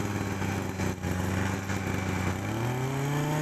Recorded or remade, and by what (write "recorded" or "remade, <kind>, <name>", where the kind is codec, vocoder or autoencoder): recorded